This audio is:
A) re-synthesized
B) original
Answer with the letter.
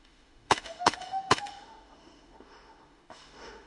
A